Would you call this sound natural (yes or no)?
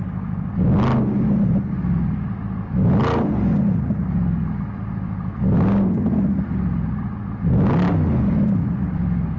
yes